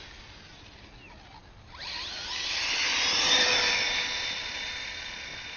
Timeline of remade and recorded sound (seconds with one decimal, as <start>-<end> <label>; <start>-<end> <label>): 0.0-5.6 recorded